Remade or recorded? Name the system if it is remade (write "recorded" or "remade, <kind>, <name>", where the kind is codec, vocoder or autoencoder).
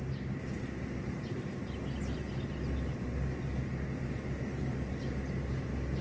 recorded